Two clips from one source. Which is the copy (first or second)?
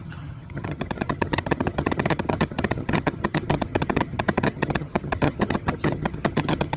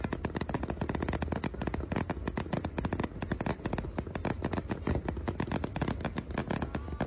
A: first